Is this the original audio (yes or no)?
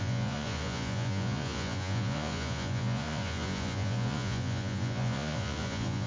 no